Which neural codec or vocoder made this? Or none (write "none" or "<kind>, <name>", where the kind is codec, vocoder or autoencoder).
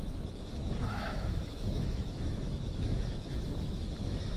autoencoder, DAC-VAE